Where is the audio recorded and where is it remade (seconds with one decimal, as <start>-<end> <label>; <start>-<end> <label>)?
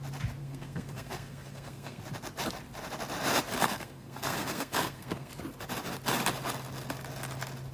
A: 0.0-0.4 recorded; 0.4-2.0 remade; 2.0-3.6 recorded; 3.6-5.3 remade; 5.3-7.7 recorded